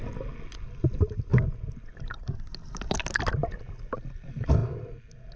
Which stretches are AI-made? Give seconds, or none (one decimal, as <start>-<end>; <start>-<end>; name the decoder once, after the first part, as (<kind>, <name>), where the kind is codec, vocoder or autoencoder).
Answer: none